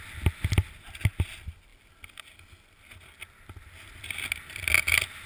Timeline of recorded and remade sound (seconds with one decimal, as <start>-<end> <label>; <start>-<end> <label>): 0.0-5.3 recorded